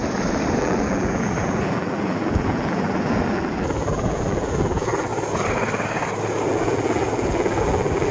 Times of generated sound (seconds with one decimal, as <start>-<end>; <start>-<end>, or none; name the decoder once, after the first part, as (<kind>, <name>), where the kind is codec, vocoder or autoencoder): 0.6-5.1 (vocoder, BigVGAN v2); 6.5-8.1